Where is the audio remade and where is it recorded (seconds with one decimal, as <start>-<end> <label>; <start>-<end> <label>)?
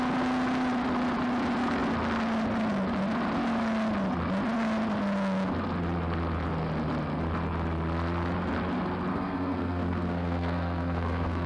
0.0-9.1 recorded; 9.1-11.5 remade